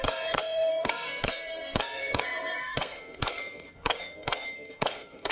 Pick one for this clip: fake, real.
fake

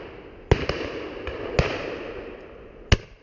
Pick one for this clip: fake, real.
real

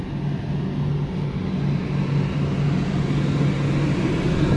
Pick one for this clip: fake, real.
real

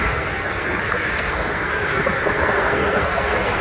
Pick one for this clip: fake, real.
fake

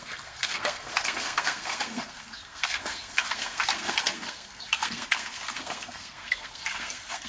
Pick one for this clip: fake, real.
fake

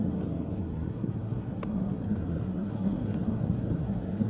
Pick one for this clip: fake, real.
fake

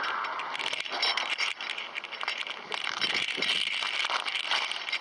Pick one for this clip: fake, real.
real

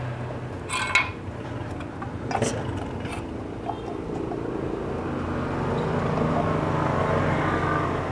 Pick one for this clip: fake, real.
real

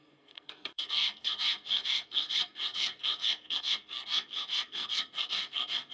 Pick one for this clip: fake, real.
fake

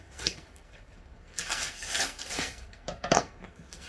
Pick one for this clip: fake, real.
fake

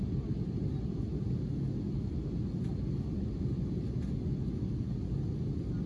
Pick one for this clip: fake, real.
real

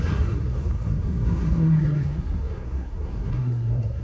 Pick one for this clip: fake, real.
fake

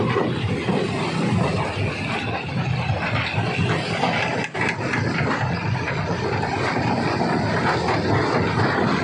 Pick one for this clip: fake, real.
real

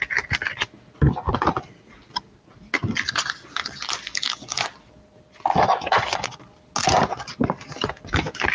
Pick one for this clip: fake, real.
real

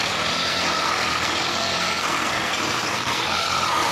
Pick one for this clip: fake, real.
fake